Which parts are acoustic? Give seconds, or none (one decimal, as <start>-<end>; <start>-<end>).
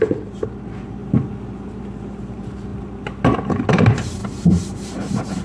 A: 1.0-2.2; 2.7-3.7